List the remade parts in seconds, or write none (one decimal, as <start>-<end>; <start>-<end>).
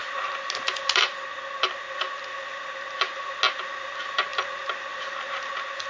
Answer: none